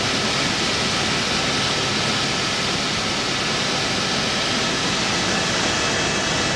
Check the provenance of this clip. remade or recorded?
recorded